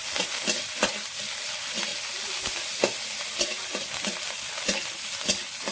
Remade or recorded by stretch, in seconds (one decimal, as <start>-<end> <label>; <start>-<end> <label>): 0.0-5.7 recorded